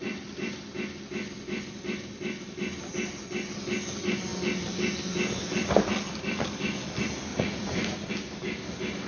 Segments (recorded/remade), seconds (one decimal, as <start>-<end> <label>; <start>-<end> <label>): 0.0-7.3 recorded; 7.3-8.1 remade; 8.1-9.1 recorded